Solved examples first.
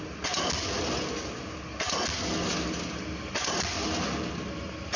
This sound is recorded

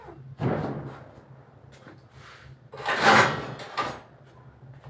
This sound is recorded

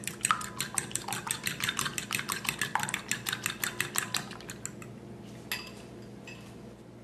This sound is recorded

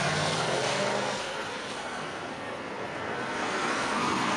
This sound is remade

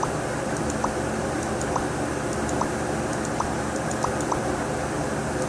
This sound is recorded